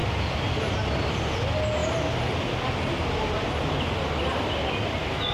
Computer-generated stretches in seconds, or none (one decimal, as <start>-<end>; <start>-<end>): none